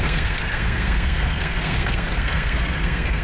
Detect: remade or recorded remade